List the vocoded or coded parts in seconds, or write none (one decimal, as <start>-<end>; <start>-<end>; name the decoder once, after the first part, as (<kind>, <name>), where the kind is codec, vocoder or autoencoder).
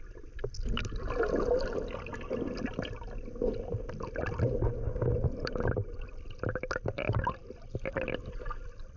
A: none